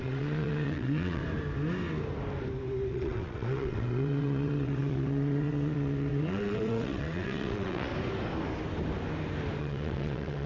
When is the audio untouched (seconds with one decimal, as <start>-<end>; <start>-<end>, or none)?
1.2-2.9; 7.9-9.6